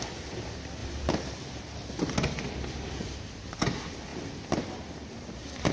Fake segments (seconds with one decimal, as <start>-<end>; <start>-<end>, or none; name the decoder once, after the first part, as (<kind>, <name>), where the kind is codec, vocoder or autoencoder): none